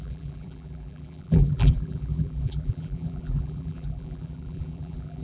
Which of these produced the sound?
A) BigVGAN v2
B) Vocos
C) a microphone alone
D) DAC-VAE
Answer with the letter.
A